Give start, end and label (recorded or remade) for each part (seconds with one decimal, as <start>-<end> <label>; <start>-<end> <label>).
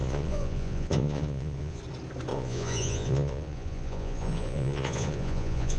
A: 0.0-1.8 remade; 1.8-2.3 recorded; 2.3-5.8 remade